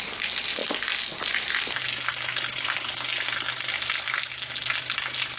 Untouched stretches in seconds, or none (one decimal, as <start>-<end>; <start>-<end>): 0.0-5.4